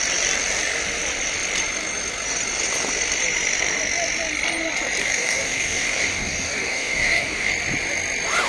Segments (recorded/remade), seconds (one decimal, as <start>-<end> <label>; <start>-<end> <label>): 0.0-5.0 recorded; 5.0-7.5 remade; 7.5-8.5 recorded